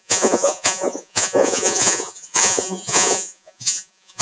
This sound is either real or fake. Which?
fake